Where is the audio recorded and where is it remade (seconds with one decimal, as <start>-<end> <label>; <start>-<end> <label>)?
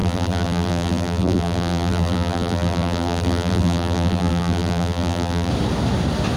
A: 0.0-5.5 remade; 5.5-6.4 recorded